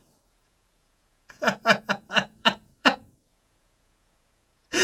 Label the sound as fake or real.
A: fake